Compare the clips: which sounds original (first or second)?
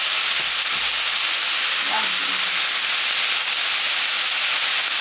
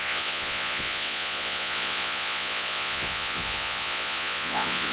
first